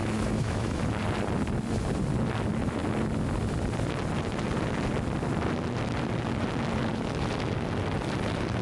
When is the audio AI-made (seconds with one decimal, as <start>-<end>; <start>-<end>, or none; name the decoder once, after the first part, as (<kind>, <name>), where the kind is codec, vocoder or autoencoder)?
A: 0.0-0.8 (autoencoder, DAC-VAE)